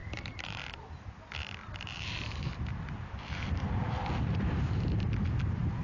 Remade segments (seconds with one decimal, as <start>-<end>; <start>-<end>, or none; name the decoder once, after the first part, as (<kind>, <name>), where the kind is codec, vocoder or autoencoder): 0.0-0.9 (vocoder, BigVGAN v2); 1.6-5.1